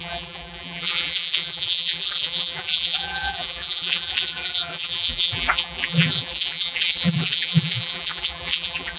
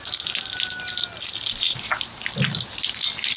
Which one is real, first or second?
second